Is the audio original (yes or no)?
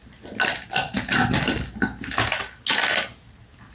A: yes